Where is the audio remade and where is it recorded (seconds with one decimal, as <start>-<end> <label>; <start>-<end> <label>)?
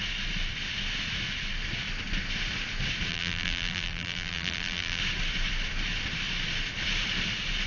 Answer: 0.0-3.1 recorded; 3.1-5.0 remade; 5.0-7.7 recorded